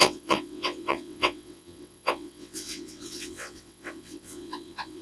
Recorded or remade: remade